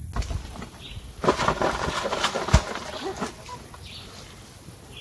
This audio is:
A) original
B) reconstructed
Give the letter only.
A